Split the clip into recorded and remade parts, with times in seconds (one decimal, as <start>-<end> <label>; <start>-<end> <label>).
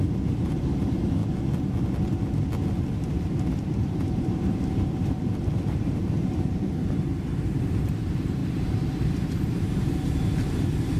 0.0-1.2 remade; 1.2-3.3 recorded; 3.3-11.0 remade